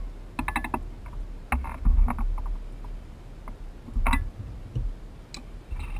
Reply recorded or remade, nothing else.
recorded